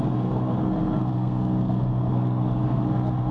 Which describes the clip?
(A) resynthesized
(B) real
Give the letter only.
A